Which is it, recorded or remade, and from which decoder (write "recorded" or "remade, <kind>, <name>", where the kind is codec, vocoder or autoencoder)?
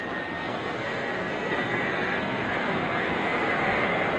remade, codec, SNAC